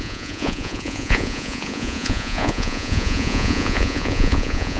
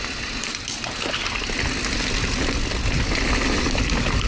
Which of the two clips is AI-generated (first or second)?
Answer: first